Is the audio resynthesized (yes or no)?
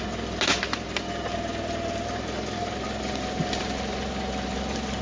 no